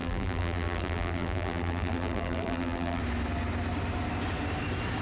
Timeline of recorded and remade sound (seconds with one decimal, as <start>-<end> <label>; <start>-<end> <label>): 0.0-3.0 remade; 3.0-5.0 recorded